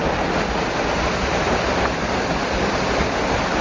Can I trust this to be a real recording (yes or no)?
yes